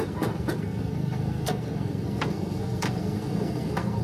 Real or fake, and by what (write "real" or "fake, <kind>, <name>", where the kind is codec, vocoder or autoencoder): fake, codec, SNAC